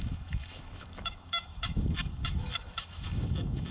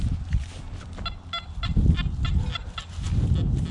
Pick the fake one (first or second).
first